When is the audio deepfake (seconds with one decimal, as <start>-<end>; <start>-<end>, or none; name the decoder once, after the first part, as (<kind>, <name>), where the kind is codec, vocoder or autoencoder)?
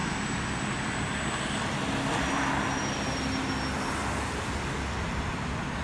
none